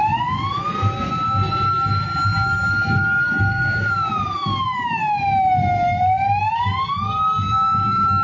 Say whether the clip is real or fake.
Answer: real